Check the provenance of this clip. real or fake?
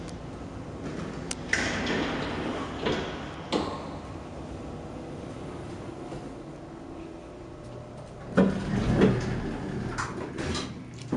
real